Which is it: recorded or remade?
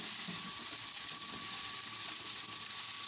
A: recorded